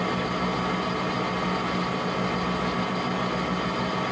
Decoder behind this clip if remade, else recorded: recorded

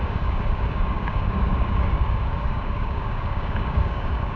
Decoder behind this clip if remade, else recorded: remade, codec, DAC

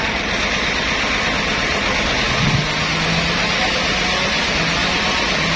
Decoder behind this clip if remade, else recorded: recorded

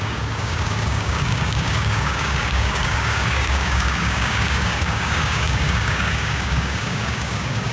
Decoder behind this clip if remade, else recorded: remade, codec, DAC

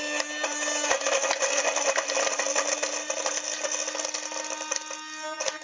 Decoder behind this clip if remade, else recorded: recorded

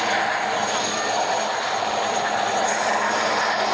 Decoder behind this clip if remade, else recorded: recorded